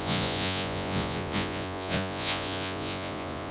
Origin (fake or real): fake